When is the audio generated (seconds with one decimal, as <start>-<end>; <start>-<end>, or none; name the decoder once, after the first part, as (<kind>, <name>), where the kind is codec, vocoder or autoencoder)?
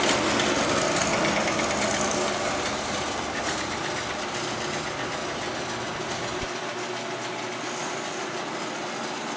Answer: none